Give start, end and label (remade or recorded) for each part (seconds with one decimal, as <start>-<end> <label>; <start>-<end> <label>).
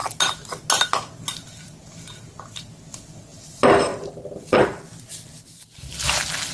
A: 0.0-6.5 recorded